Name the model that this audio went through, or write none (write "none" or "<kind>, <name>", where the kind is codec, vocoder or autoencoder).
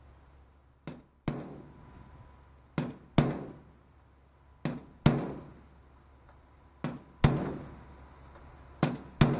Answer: none